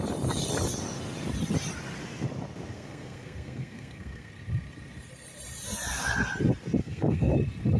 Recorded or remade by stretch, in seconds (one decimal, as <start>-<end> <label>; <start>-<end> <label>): 0.0-2.7 recorded; 2.7-4.3 remade; 4.3-6.8 recorded; 6.8-7.3 remade; 7.3-7.8 recorded